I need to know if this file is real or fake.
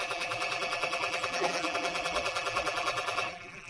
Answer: fake